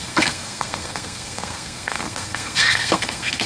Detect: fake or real fake